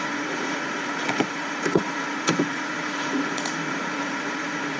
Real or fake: fake